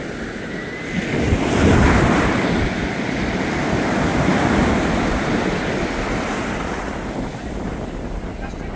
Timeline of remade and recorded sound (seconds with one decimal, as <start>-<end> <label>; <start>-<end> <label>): 0.0-4.1 recorded; 4.1-4.7 remade; 4.7-8.8 recorded